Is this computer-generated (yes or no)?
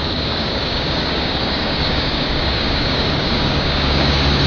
yes